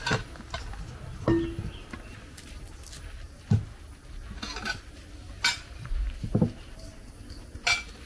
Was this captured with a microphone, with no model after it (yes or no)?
yes